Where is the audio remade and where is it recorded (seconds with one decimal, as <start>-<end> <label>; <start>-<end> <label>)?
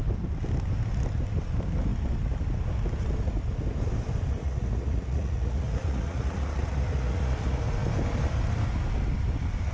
0.0-4.4 recorded; 4.4-7.6 remade; 7.6-9.7 recorded